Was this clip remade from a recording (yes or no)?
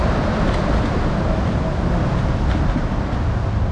no